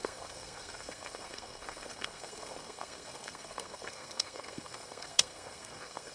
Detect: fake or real fake